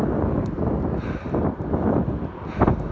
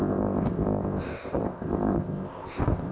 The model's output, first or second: second